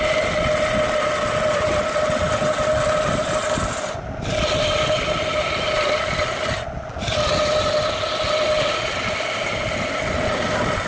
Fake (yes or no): no